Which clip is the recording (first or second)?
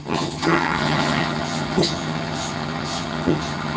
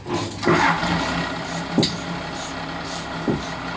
second